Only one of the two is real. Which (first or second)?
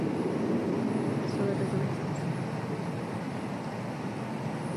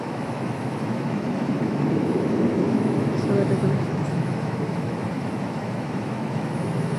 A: first